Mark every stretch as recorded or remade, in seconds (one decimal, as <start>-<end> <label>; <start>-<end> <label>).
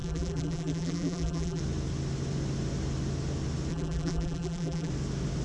0.0-1.6 remade; 1.6-3.7 recorded; 3.7-4.9 remade; 4.9-5.4 recorded